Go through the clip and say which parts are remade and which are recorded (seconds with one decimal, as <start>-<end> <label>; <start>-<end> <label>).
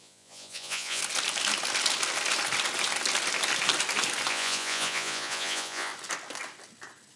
0.0-1.0 remade; 1.0-4.3 recorded; 4.3-5.9 remade; 5.9-7.2 recorded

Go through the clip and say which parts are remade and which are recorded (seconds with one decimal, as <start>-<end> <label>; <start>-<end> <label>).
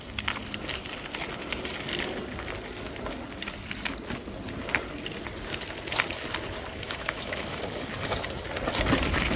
0.0-6.7 recorded; 6.7-7.6 remade; 7.6-9.4 recorded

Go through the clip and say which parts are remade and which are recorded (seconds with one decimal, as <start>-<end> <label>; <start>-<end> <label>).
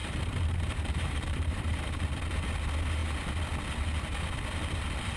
0.0-2.0 remade; 2.0-5.2 recorded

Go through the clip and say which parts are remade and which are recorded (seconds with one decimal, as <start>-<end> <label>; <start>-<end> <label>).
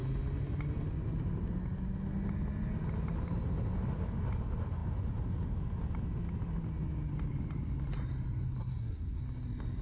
0.0-8.6 recorded; 8.6-9.2 remade; 9.2-9.8 recorded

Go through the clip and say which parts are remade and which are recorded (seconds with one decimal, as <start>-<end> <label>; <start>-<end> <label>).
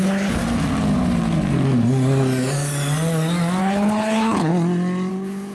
0.0-0.4 remade; 0.4-3.6 recorded; 3.6-4.5 remade; 4.5-5.1 recorded; 5.1-5.5 remade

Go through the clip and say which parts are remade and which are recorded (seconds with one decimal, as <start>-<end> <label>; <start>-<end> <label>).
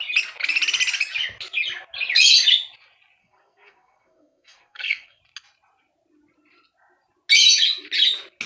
0.0-3.2 recorded; 3.2-5.2 remade; 5.2-8.5 recorded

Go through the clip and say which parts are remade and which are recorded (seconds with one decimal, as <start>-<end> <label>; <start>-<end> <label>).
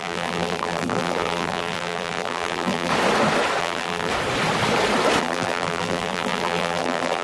0.0-2.9 remade; 2.9-3.6 recorded; 3.6-4.1 remade; 4.1-5.2 recorded; 5.2-7.2 remade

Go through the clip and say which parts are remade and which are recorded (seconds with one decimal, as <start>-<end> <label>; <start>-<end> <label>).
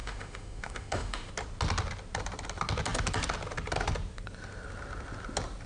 0.0-1.3 remade; 1.3-5.7 recorded